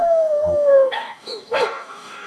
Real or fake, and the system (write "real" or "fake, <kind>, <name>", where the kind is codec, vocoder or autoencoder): fake, codec, DAC